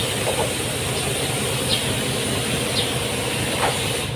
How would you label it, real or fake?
real